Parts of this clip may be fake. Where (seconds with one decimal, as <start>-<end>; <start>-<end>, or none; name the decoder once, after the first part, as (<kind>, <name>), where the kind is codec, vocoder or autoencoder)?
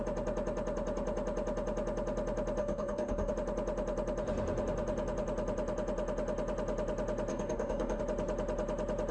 2.6-3.3 (codec, DAC); 7.3-8.0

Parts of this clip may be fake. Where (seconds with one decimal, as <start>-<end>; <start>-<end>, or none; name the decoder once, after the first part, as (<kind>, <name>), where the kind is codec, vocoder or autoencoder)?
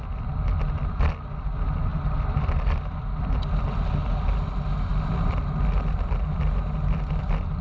none